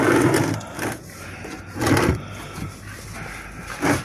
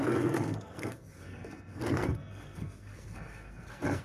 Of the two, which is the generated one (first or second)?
second